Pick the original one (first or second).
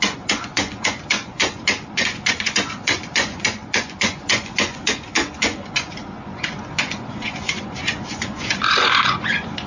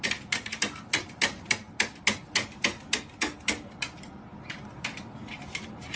second